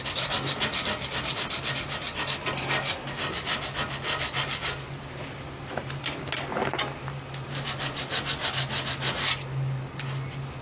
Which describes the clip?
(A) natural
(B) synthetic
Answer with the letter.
A